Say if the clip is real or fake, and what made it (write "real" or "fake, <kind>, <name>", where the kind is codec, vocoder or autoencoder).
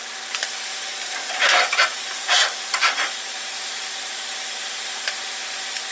fake, vocoder, BigVGAN v2